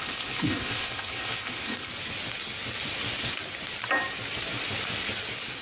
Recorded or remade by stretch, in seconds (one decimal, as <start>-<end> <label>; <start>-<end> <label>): 0.0-1.9 remade; 1.9-5.6 recorded